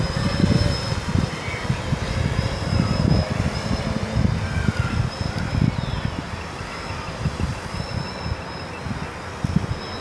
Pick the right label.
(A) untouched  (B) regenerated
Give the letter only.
A